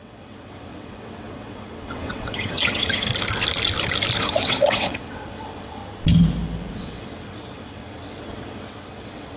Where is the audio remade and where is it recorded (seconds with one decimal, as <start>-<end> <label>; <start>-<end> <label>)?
0.0-3.1 remade; 3.1-4.2 recorded; 4.2-5.8 remade; 5.8-6.7 recorded; 6.7-9.4 remade